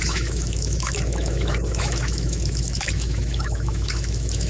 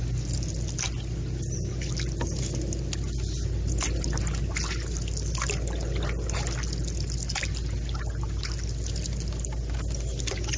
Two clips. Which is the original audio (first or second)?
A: second